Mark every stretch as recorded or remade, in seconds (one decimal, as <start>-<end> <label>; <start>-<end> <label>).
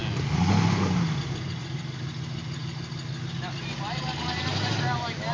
0.0-5.3 recorded